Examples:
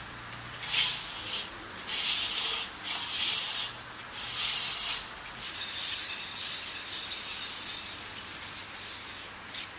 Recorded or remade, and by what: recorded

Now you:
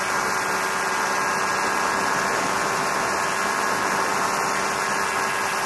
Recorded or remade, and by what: recorded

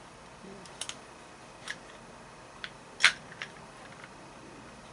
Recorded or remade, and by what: recorded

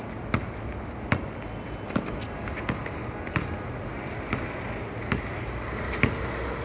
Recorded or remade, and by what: recorded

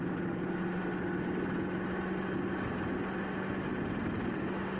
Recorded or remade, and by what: recorded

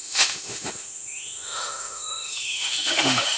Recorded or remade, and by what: remade, autoencoder, DAC-VAE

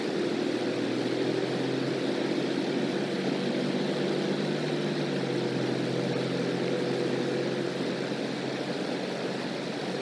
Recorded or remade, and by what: recorded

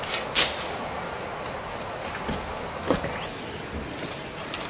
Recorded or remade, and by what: recorded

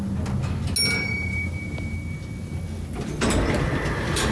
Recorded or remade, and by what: recorded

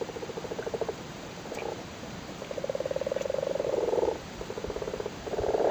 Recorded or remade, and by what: remade, vocoder, BigVGAN v2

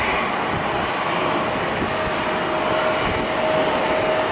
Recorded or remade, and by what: recorded